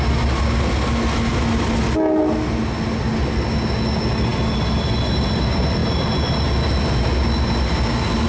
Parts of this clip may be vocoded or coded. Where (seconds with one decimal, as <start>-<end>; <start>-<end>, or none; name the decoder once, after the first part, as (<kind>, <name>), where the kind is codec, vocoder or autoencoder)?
none